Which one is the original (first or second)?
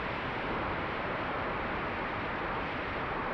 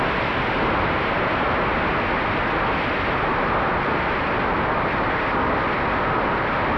second